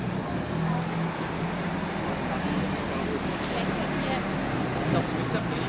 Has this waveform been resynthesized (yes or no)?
no